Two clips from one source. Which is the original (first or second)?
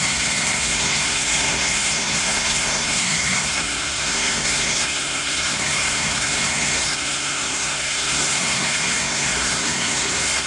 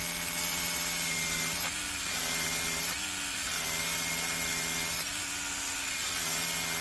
second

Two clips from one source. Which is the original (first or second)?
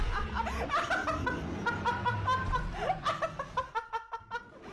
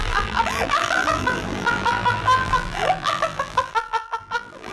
first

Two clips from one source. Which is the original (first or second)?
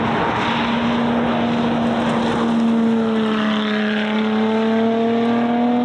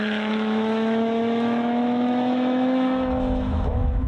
first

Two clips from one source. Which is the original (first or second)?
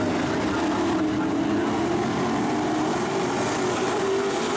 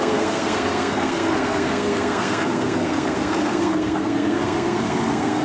first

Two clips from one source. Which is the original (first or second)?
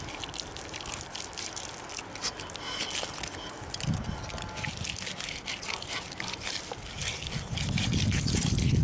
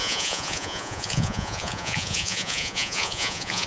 first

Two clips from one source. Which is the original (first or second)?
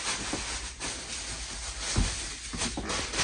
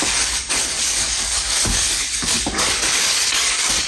first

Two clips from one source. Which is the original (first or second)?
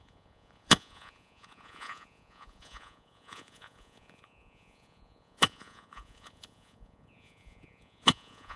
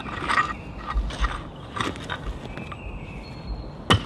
second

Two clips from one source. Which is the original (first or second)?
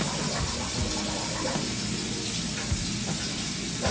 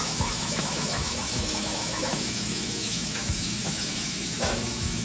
first